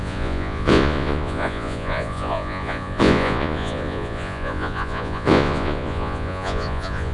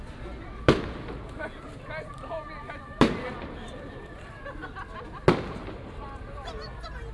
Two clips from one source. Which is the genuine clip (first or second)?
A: second